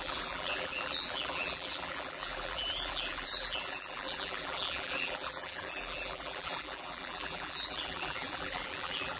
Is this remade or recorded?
remade